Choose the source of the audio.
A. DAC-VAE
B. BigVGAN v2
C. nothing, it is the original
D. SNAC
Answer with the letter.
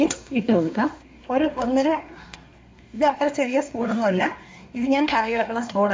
D